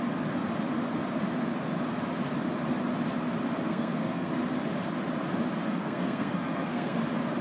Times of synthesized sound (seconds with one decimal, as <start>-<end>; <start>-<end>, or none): 3.7-4.3; 5.7-7.0